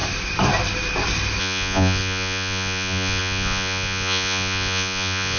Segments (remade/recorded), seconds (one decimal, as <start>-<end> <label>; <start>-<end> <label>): 0.0-1.4 recorded; 1.4-5.4 remade